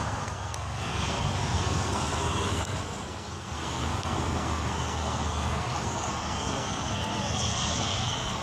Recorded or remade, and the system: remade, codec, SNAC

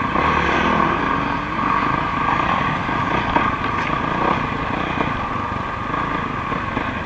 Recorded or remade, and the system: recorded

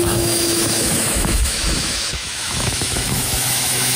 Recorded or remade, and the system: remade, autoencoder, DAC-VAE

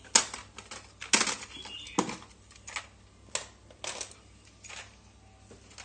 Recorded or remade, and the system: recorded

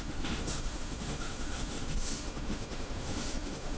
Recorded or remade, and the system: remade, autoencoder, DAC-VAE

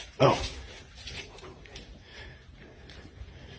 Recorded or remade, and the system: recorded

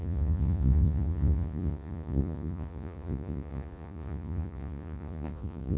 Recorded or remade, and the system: remade, vocoder, Vocos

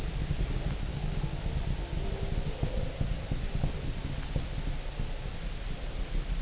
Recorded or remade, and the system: recorded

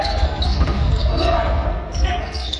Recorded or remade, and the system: remade, codec, SNAC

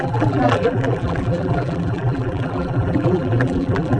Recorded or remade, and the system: remade, vocoder, BigVGAN v2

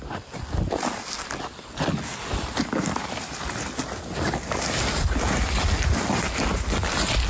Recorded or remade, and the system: recorded